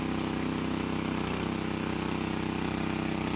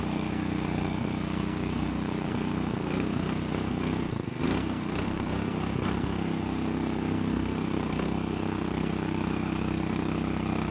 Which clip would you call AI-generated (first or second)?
second